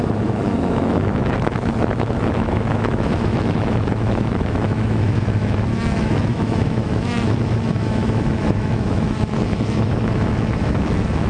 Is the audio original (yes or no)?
no